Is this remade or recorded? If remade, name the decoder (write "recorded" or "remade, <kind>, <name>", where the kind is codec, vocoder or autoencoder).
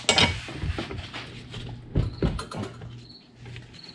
recorded